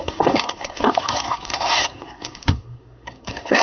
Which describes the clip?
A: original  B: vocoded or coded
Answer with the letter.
B